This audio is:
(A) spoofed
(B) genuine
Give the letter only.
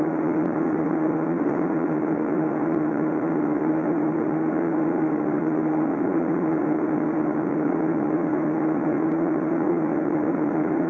A